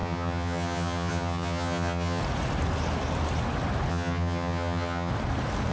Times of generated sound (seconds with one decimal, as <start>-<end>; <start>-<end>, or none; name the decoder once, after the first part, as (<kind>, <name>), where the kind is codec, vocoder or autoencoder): 0.0-2.2 (vocoder, HiFi-GAN); 3.9-5.1